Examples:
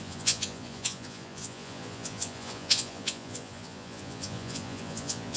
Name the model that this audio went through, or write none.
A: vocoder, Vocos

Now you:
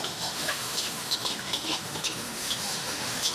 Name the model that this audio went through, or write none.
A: autoencoder, DAC-VAE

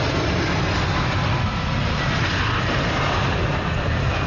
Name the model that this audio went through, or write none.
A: none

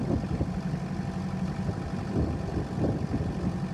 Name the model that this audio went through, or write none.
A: none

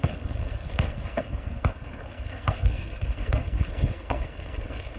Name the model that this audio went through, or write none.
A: codec, SNAC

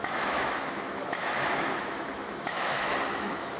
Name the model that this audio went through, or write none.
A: autoencoder, DAC-VAE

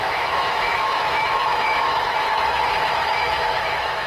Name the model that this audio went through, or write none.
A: autoencoder, DAC-VAE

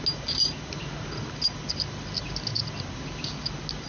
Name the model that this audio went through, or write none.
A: none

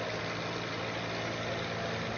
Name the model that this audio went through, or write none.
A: none